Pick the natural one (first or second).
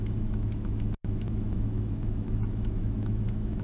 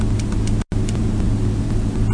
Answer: second